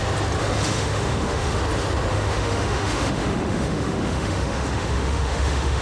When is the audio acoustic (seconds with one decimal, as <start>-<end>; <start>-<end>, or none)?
0.0-0.4; 1.6-2.1